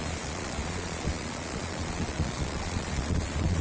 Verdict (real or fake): fake